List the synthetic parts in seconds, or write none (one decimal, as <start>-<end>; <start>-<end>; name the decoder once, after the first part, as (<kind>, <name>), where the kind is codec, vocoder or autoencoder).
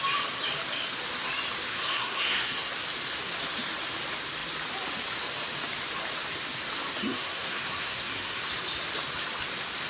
1.7-2.7 (codec, SNAC); 7.0-8.4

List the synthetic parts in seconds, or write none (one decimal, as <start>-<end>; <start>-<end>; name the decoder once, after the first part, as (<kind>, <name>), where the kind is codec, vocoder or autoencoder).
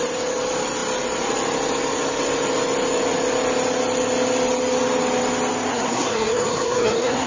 5.7-7.3 (codec, SNAC)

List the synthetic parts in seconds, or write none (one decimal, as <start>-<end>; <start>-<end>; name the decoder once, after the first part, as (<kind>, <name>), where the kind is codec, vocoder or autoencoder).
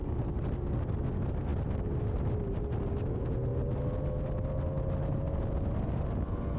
none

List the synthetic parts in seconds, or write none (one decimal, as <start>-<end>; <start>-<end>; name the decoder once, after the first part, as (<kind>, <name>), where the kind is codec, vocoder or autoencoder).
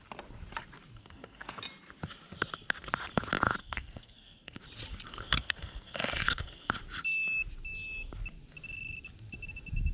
1.0-1.6 (codec, SNAC); 3.6-4.6; 5.1-6.7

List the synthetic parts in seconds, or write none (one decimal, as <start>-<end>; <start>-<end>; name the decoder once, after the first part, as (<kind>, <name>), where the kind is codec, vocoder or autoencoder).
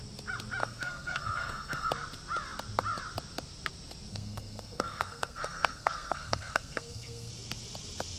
0.6-1.9 (codec, SNAC); 4.1-7.3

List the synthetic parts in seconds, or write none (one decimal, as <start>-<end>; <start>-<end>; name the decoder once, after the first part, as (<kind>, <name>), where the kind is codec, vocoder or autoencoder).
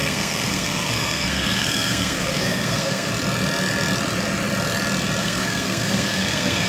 0.0-3.1 (codec, SNAC); 5.2-6.7